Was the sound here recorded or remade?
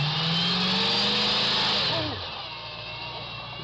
recorded